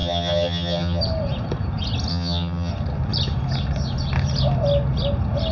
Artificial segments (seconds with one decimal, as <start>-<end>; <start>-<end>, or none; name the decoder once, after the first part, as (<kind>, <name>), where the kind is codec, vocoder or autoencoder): 0.0-1.0 (vocoder, HiFi-GAN); 2.1-2.7